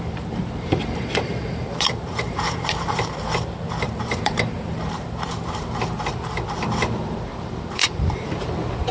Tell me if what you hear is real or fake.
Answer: fake